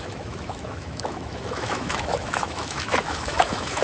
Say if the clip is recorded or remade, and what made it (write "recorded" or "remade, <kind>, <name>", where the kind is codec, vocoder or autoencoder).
remade, autoencoder, DAC-VAE